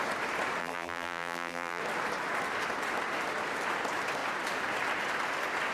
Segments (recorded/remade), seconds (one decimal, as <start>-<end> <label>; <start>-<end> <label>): 0.0-0.6 recorded; 0.6-1.8 remade; 1.8-5.7 recorded